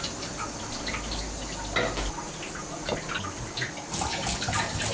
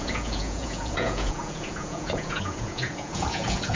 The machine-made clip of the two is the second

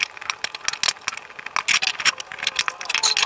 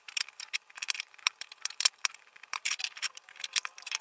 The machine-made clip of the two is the second